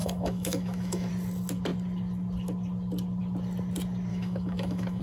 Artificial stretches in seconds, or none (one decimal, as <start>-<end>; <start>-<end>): 0.0-1.1; 4.1-5.0